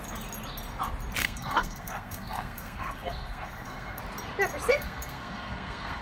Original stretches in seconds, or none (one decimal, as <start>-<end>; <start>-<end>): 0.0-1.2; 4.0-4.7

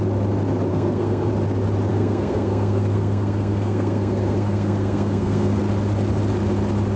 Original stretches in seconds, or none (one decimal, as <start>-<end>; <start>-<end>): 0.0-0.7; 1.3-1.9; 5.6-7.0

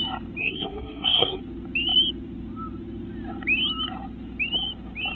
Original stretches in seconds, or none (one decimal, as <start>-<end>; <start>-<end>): 0.0-0.4; 1.4-5.1

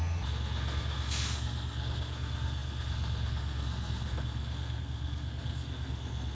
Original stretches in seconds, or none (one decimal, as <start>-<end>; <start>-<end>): none

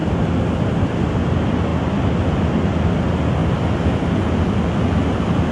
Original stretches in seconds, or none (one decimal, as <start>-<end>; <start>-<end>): 0.0-5.5

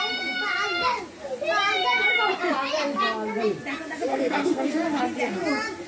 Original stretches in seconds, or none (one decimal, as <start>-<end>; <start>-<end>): 0.0-4.1; 5.0-5.9

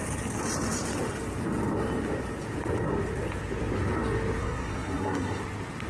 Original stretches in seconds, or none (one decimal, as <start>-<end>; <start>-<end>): 0.0-4.4; 5.4-5.9

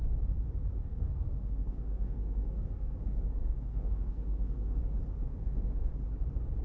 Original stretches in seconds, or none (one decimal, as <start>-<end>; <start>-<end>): 0.0-0.8; 4.8-5.3; 5.9-6.6